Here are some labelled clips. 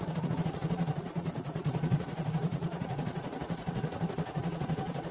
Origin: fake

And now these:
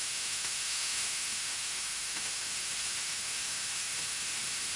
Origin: fake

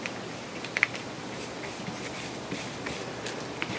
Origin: real